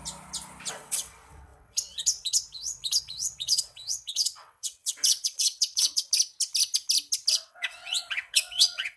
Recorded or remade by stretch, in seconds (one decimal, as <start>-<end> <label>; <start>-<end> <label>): 0.0-0.7 recorded; 0.7-6.0 remade; 6.0-7.3 recorded; 7.3-9.0 remade